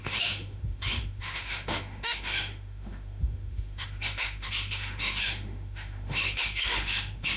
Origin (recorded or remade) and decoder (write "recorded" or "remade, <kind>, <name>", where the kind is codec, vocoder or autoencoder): remade, autoencoder, DAC-VAE